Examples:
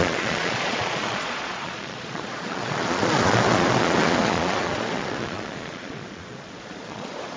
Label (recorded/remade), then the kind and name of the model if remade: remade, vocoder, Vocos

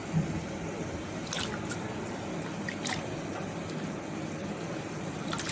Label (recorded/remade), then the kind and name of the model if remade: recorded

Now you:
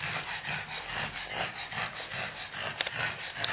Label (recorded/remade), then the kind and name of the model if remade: recorded